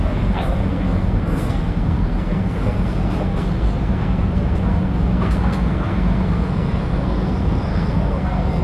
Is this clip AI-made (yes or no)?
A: yes